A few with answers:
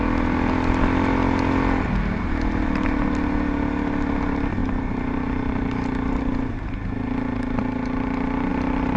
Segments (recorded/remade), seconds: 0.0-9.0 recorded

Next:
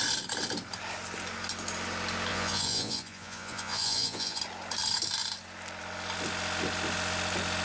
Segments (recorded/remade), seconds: 0.0-2.3 recorded; 2.3-4.4 remade; 4.4-7.6 recorded

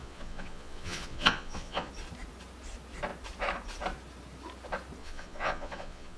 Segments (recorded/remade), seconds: 0.0-1.9 remade; 1.9-5.0 recorded; 5.0-6.2 remade

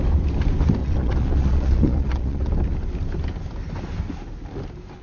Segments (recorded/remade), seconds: 0.0-0.8 recorded; 0.8-2.5 remade; 2.5-5.0 recorded